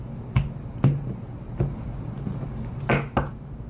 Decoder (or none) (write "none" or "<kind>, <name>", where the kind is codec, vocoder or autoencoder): none